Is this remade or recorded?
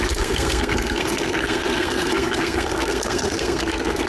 remade